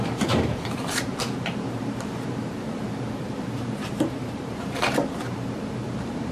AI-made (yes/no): yes